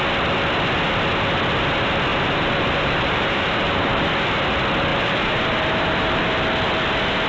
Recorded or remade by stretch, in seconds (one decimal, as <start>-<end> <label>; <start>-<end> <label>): 0.0-2.1 recorded; 2.1-4.1 remade; 4.1-4.9 recorded; 4.9-6.2 remade; 6.2-7.3 recorded